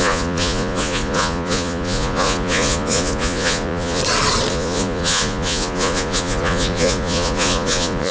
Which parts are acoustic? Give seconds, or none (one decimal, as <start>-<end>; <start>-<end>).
4.0-4.5

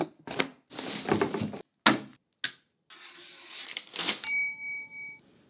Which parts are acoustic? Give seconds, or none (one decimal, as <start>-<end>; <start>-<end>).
0.0-5.5